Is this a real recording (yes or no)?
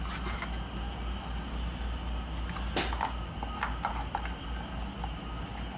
yes